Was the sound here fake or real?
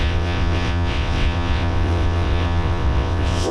fake